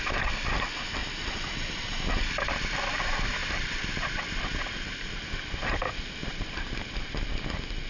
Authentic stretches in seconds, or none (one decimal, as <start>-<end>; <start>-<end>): 0.0-1.0; 1.8-3.4; 4.2-6.2; 7.2-7.9